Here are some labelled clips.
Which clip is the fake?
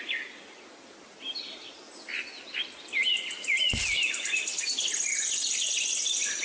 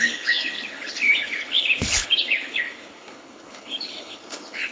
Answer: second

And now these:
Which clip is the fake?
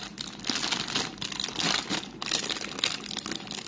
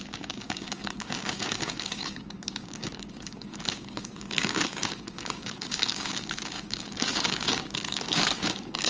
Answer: second